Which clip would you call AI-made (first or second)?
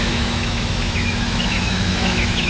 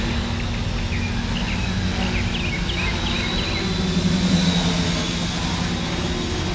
first